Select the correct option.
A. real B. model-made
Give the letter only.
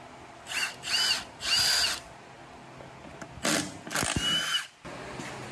A